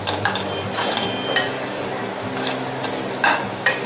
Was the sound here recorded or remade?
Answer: recorded